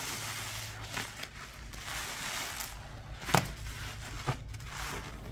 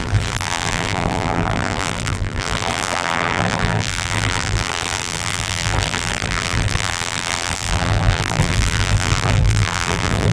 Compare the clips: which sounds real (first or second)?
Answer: first